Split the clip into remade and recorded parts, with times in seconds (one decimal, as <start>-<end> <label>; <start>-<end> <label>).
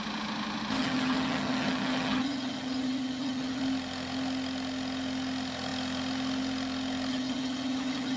0.0-0.8 recorded; 0.8-3.6 remade; 3.6-7.1 recorded; 7.1-8.2 remade